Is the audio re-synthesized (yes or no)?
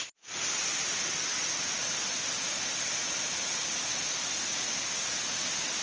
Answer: no